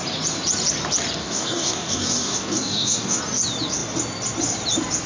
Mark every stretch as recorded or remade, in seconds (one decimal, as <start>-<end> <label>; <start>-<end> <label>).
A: 0.0-1.2 recorded; 1.2-3.2 remade; 3.2-5.1 recorded